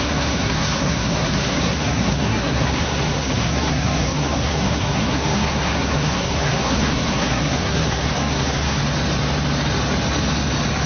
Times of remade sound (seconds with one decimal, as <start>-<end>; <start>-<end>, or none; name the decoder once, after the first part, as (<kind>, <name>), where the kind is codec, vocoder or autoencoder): 0.0-8.8 (codec, SNAC)